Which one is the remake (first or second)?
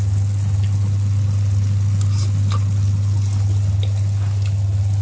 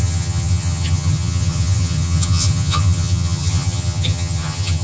second